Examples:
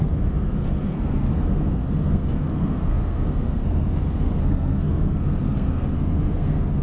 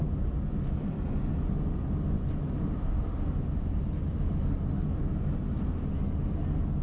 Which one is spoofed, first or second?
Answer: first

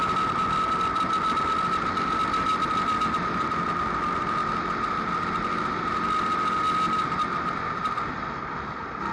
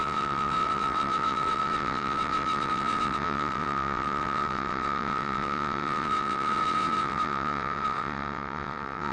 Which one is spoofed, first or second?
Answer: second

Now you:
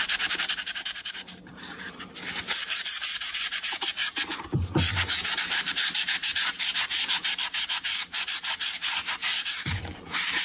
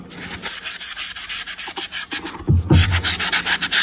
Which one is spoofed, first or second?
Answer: first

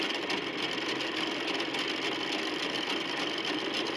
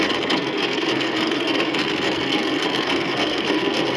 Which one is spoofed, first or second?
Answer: second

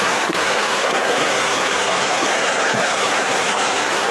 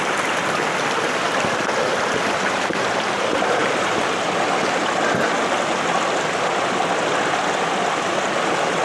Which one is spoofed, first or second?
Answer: first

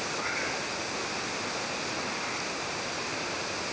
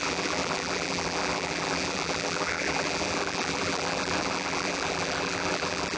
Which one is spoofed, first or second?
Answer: second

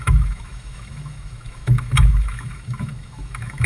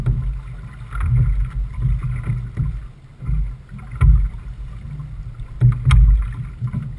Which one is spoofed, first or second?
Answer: first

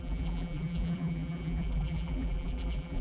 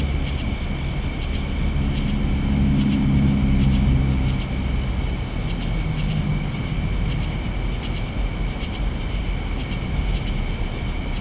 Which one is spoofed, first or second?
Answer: first